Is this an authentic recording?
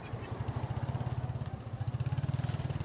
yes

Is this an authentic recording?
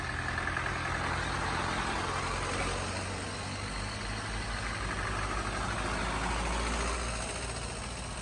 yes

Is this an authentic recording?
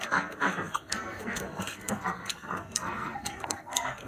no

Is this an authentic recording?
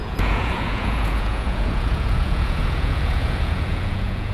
no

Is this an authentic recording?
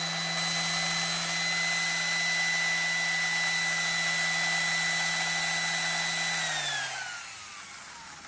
yes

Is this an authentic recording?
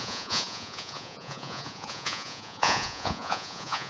no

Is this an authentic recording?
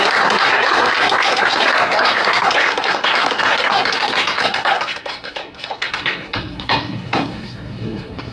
no